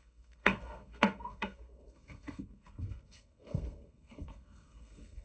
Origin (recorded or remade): remade